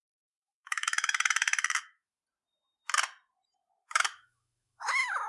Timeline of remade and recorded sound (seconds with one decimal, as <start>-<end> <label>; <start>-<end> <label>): 0.0-2.2 remade; 2.2-3.8 recorded; 3.8-5.3 remade